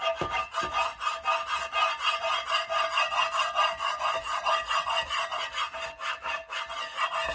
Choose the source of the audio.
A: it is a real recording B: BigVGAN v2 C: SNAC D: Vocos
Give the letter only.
A